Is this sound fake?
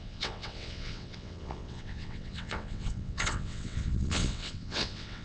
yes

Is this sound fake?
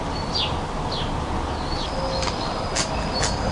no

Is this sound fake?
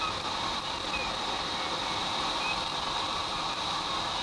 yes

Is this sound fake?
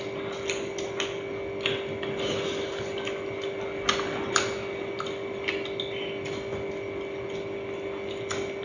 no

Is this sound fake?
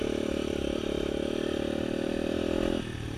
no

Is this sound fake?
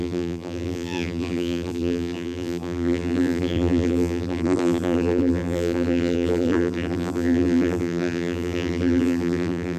yes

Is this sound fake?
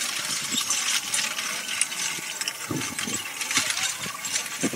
no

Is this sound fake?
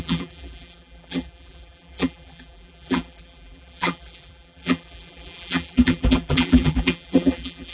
yes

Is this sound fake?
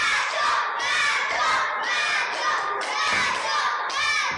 no